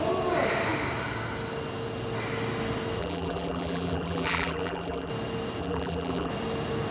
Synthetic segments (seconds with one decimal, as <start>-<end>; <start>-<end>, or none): 3.0-5.1; 5.6-6.3